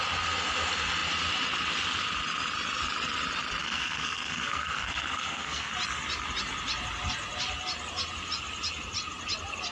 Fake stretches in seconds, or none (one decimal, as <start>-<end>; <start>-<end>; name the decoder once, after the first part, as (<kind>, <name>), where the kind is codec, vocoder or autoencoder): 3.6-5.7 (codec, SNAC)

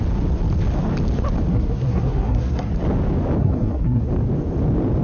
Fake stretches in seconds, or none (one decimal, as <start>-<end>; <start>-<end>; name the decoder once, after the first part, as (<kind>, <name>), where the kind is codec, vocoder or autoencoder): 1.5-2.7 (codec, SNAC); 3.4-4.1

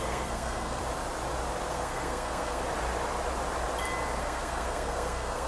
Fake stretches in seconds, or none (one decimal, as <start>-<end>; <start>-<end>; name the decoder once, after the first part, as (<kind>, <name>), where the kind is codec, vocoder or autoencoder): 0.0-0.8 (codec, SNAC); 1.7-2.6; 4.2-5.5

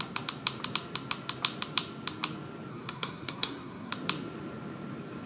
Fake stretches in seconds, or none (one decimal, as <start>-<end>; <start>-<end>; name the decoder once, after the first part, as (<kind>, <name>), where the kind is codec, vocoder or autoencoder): 2.7-3.9 (codec, SNAC)